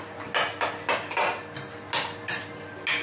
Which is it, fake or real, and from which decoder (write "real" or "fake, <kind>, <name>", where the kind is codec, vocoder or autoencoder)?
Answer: real